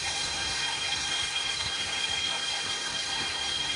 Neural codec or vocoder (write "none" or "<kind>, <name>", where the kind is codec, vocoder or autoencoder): codec, SNAC